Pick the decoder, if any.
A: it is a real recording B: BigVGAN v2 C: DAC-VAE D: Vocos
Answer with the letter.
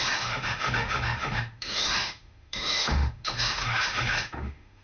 C